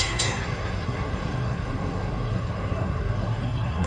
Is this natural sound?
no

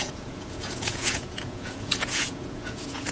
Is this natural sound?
no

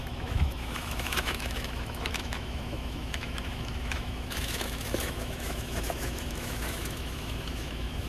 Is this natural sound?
no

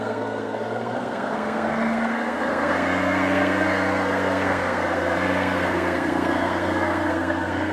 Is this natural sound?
no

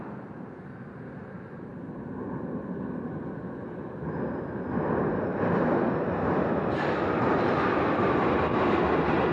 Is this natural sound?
yes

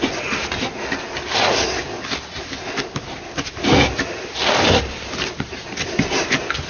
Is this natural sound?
yes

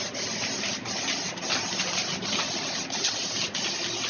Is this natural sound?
yes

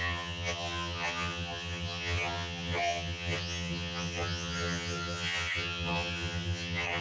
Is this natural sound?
no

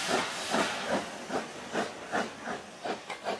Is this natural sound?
yes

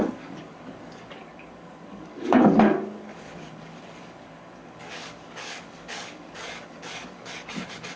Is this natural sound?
no